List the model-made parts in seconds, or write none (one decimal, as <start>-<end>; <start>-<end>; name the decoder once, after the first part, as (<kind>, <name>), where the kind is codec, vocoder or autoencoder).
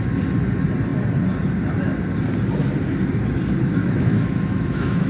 3.8-5.1 (autoencoder, DAC-VAE)